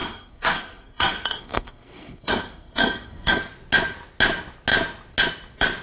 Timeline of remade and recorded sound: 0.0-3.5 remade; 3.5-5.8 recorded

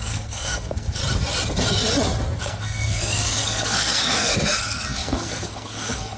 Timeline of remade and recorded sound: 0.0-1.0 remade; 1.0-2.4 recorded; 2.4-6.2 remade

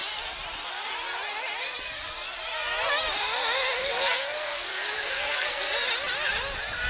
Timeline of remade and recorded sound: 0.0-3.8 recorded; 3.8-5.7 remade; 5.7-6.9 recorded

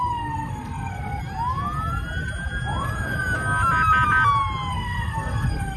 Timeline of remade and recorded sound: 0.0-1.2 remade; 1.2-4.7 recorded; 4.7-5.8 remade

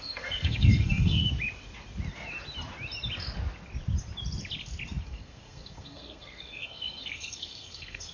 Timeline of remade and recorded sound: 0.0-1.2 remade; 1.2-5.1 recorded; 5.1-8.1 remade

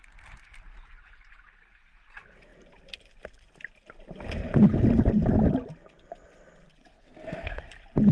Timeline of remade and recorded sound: 0.0-6.9 recorded; 6.9-7.6 remade; 7.6-8.1 recorded

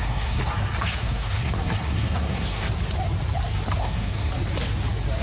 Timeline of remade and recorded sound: 0.0-0.4 remade; 0.4-1.0 recorded; 1.0-2.7 remade; 2.7-3.8 recorded; 3.8-4.3 remade; 4.3-5.2 recorded

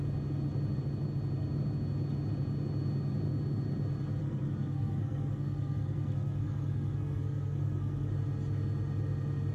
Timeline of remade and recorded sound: 0.0-4.2 recorded; 4.2-8.1 remade; 8.1-9.5 recorded